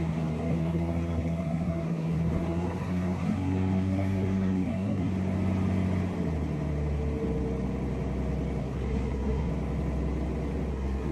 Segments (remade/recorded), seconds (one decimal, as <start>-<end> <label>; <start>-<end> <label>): 0.0-5.1 remade; 5.1-8.6 recorded; 8.6-9.5 remade; 9.5-10.7 recorded; 10.7-11.1 remade